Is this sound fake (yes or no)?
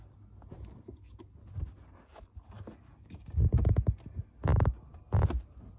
no